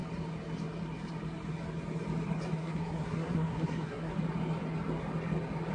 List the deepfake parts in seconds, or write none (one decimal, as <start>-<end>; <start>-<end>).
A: 2.6-4.1